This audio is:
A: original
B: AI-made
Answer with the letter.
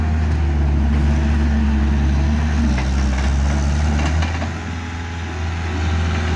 A